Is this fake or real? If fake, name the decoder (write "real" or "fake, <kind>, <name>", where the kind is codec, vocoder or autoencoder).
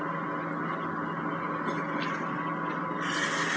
real